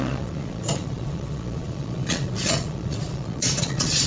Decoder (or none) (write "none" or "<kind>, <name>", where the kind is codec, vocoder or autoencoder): vocoder, Vocos